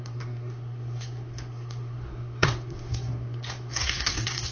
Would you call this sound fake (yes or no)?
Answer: yes